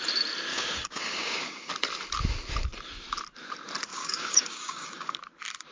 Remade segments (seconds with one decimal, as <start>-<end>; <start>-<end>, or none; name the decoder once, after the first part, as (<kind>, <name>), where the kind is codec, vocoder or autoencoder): 0.5-1.7 (codec, DAC); 3.9-5.2